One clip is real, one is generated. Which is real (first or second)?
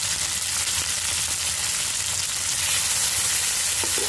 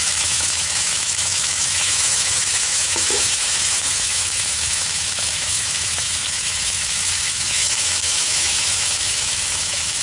first